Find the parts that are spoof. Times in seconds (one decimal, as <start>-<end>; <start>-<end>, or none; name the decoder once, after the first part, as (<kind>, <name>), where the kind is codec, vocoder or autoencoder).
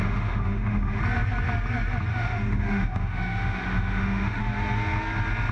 0.0-1.0 (autoencoder, DAC-VAE); 2.1-4.4